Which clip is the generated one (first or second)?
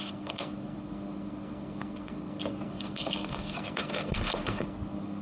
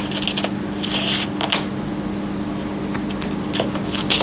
first